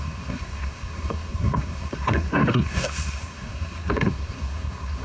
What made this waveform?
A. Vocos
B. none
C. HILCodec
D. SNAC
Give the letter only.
D